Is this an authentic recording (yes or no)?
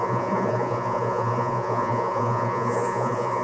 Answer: no